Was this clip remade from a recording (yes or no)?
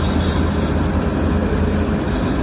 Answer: no